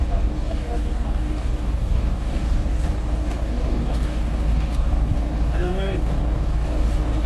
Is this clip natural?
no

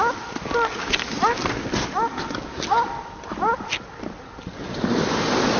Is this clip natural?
yes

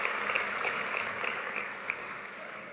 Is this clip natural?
no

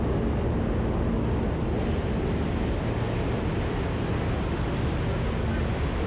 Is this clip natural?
yes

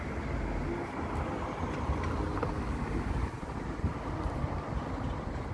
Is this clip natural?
yes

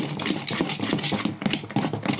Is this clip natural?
yes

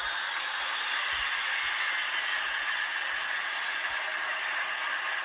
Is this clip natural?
yes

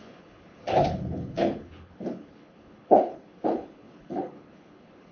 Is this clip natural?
no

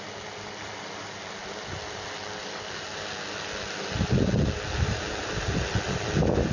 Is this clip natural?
yes